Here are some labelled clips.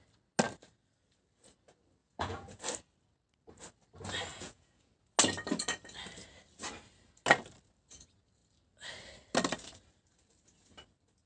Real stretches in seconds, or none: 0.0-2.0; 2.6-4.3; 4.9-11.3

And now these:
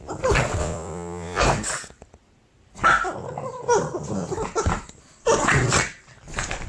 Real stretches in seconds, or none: 0.0-0.6; 1.4-6.7